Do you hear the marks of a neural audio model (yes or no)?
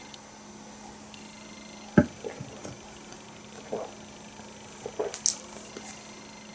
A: no